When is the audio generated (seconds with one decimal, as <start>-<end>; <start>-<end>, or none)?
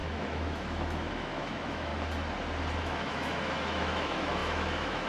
0.0-1.9; 2.8-5.1